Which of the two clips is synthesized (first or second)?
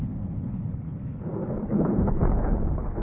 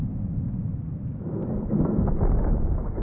first